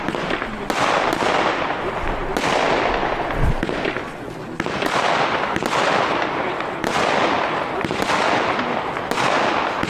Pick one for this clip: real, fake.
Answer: real